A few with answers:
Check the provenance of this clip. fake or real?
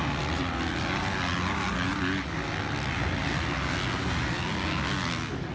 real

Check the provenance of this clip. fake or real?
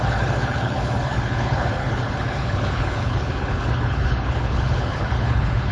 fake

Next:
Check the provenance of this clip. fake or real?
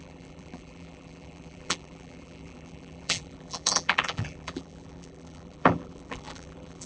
fake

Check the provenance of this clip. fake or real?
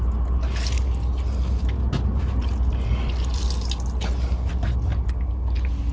real